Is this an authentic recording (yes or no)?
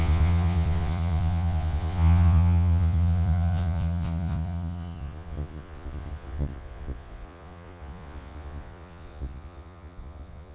no